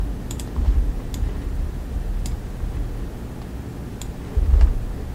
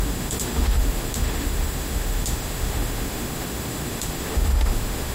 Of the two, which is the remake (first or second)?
second